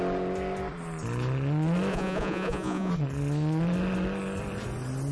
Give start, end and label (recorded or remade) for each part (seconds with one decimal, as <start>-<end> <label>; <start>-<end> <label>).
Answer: 0.0-1.9 recorded; 1.9-2.9 remade; 2.9-5.1 recorded